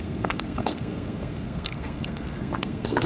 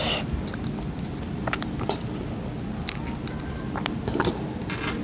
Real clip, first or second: second